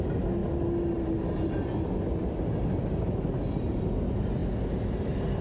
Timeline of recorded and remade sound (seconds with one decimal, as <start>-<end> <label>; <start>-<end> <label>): 0.0-5.4 recorded